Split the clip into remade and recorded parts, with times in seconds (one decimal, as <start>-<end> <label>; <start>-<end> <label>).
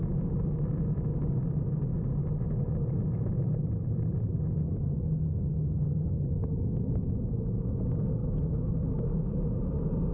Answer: 0.0-3.6 recorded; 3.6-4.5 remade; 4.5-10.1 recorded